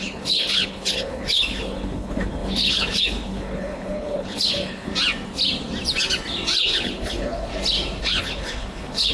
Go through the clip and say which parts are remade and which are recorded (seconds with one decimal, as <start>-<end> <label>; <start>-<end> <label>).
0.0-4.9 remade; 4.9-6.6 recorded; 6.6-7.5 remade; 7.5-8.0 recorded; 8.0-9.1 remade